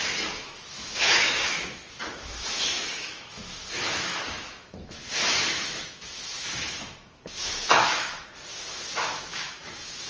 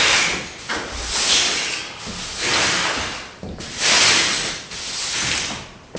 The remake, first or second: first